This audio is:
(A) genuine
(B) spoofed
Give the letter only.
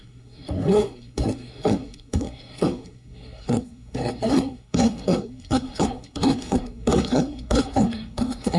B